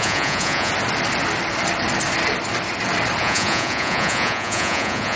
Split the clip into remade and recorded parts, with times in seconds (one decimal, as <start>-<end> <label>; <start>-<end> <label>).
0.0-0.7 remade; 0.7-3.2 recorded; 3.2-5.2 remade